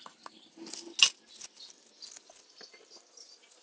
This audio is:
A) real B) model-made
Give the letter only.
A